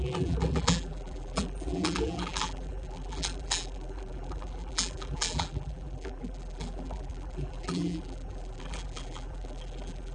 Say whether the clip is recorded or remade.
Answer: remade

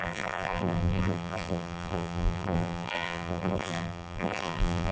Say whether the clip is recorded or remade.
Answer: remade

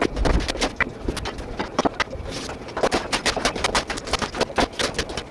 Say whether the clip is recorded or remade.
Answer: recorded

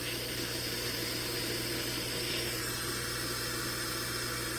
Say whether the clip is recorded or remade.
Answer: recorded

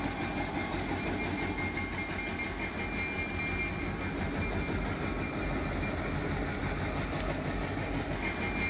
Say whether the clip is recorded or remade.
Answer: recorded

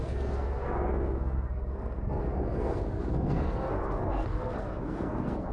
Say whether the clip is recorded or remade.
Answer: remade